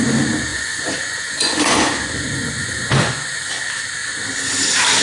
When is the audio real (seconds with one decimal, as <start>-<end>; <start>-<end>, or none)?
0.0-0.5; 3.5-5.0